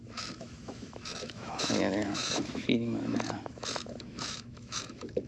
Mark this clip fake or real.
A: fake